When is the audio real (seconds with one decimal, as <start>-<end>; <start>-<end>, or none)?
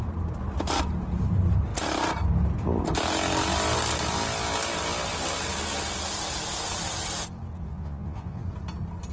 0.0-7.7; 8.4-9.1